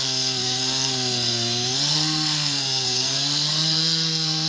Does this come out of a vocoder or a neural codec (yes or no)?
yes